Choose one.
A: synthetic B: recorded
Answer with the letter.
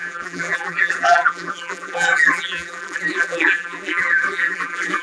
A